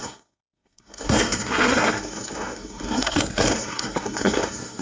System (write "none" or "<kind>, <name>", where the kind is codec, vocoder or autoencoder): codec, SNAC